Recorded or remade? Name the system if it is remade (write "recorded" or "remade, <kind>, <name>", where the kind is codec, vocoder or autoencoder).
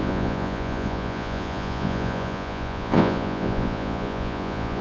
remade, vocoder, Vocos